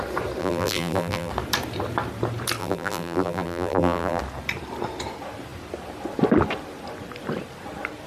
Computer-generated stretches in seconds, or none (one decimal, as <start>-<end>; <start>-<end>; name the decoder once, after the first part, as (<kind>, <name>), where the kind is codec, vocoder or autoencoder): 0.4-1.3 (vocoder, BigVGAN v2); 2.6-4.2

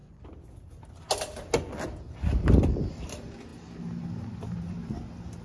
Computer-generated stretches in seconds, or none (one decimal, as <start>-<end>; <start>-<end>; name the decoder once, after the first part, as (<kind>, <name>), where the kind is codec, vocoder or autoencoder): none

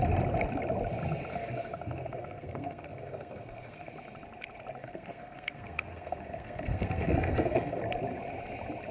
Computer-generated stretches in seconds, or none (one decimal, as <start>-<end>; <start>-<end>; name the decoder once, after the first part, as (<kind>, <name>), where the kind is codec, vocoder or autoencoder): 1.3-3.9 (codec, SNAC); 4.8-7.8

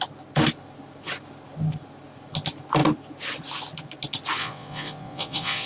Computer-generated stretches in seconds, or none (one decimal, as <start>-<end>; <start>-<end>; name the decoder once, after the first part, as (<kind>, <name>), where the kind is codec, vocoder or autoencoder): 4.4-5.7 (vocoder, Vocos)

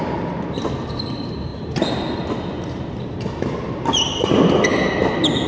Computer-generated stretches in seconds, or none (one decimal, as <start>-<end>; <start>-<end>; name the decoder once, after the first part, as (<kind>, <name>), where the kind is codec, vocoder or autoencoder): none

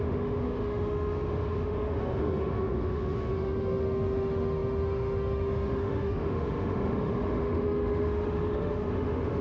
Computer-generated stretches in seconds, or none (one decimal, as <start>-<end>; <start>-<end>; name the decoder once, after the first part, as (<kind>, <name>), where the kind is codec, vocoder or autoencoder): 0.0-9.4 (autoencoder, DAC-VAE)

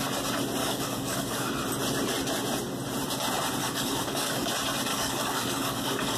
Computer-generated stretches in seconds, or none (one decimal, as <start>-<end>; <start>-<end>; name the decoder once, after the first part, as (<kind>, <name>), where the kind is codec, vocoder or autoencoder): 0.6-1.5 (codec, DAC); 3.6-4.5; 4.9-6.2